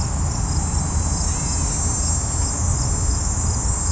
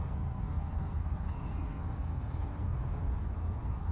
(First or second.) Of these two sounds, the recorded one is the first